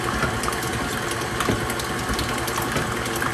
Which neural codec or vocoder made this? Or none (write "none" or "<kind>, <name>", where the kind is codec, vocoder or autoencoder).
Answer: none